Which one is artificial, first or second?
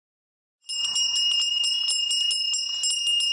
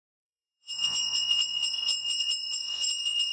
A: second